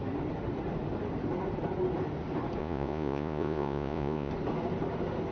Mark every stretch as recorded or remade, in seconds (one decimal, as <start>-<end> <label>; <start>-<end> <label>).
0.0-2.6 recorded; 2.6-4.3 remade; 4.3-5.3 recorded